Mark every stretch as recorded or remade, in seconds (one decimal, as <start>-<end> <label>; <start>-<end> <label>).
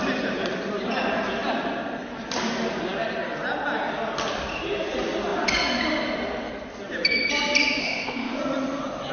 0.0-7.8 recorded; 7.8-8.4 remade; 8.4-9.1 recorded